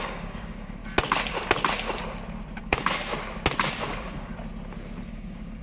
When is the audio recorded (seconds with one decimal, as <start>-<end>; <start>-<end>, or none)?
0.8-2.6; 3.1-3.7; 4.3-5.1

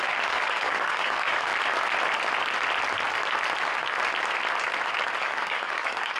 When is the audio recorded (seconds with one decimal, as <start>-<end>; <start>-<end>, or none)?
1.5-5.2

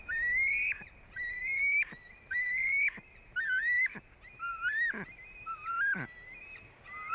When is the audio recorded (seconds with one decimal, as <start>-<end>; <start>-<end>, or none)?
0.0-7.1